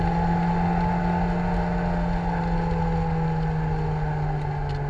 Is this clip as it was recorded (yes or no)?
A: yes